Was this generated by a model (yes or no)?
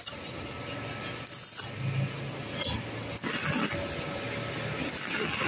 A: no